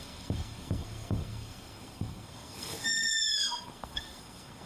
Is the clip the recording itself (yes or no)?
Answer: no